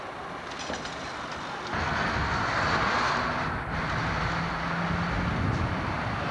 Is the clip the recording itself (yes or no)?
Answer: yes